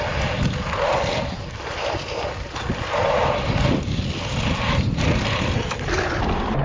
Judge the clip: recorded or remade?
recorded